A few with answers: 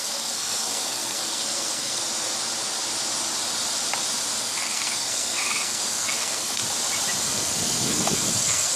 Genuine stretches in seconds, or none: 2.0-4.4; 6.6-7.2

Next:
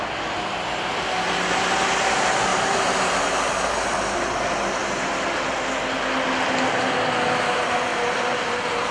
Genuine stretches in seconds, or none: 0.0-2.5; 3.6-7.9